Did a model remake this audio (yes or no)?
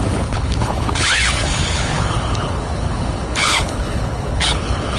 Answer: yes